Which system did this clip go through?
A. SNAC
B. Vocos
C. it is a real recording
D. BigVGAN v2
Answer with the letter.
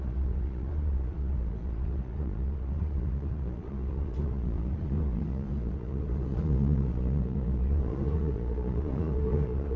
B